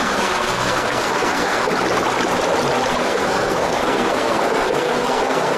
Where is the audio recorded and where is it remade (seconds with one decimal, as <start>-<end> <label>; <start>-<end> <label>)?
0.0-1.7 remade; 1.7-2.9 recorded; 2.9-5.6 remade